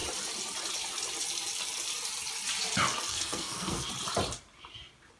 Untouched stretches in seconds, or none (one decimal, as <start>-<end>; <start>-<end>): 0.0-3.1; 3.9-5.2